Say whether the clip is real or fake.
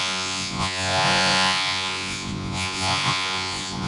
fake